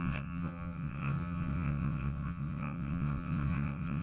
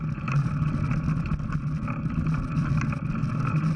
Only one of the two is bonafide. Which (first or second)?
second